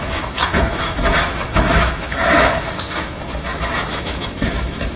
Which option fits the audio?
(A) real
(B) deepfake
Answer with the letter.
B